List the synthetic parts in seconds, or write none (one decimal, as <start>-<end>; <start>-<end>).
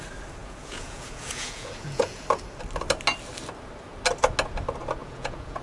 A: 0.4-2.2; 5.0-5.6